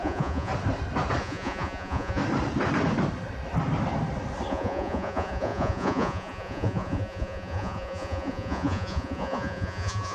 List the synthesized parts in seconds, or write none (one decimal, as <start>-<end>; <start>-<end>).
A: 0.0-0.5; 1.2-2.2; 4.5-10.1